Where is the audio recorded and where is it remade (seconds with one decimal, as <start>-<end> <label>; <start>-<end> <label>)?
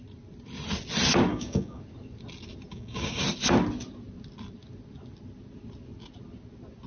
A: 0.0-1.3 recorded; 1.3-1.8 remade; 1.8-2.7 recorded; 2.7-3.2 remade; 3.2-6.9 recorded